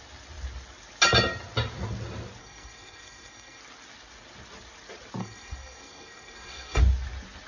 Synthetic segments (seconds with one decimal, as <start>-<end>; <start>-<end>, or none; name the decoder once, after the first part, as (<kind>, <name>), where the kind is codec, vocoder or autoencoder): 2.4-3.6 (codec, SNAC); 5.2-6.8

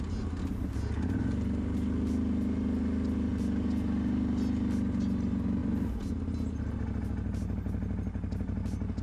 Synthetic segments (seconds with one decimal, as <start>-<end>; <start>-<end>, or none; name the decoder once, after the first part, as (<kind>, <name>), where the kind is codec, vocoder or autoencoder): 5.6-6.1 (vocoder, BigVGAN v2)

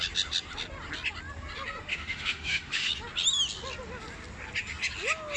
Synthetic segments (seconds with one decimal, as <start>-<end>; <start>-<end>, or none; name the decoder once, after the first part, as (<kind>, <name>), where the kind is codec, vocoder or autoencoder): 1.9-2.9 (autoencoder, DAC-VAE)

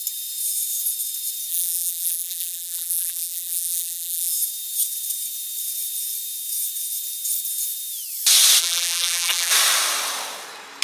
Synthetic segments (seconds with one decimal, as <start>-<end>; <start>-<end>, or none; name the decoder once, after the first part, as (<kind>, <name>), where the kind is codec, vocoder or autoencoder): 1.5-4.3 (vocoder, BigVGAN v2); 8.6-9.5

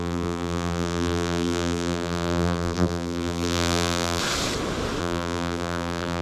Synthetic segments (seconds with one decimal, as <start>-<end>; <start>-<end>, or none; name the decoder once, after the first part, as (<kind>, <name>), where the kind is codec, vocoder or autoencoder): 0.0-4.2 (vocoder, BigVGAN v2); 5.0-6.2

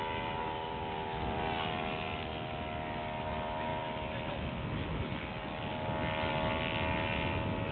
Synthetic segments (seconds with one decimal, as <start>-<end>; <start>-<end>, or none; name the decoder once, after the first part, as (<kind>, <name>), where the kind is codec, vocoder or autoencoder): none